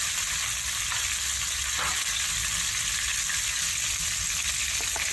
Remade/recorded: recorded